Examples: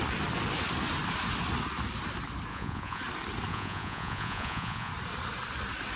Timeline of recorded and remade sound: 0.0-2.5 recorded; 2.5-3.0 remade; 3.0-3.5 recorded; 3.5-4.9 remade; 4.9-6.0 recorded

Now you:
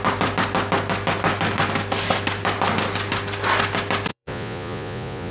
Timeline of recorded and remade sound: 0.0-4.1 recorded; 4.1-5.3 remade

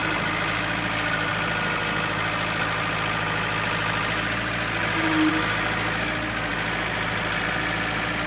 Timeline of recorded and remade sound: 0.0-8.3 recorded

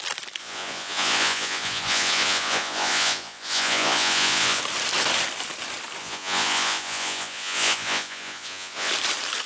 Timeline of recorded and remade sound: 0.0-0.4 recorded; 0.4-4.6 remade; 4.6-6.0 recorded; 6.0-8.9 remade; 8.9-9.5 recorded

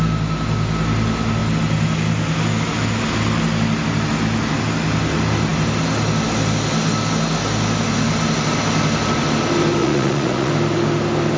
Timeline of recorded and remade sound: 0.0-9.8 recorded; 9.8-10.5 remade; 10.5-11.4 recorded

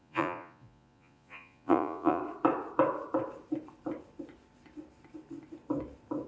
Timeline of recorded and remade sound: 0.0-2.2 remade; 2.2-6.3 recorded